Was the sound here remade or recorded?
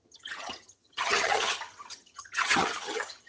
remade